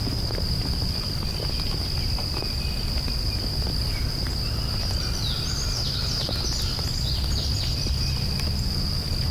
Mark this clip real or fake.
real